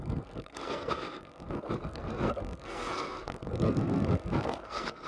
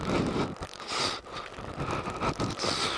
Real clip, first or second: second